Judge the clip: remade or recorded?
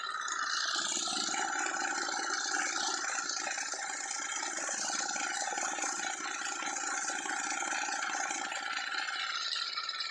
recorded